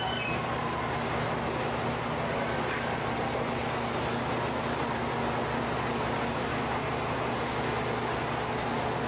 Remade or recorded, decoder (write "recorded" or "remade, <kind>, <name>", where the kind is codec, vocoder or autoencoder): recorded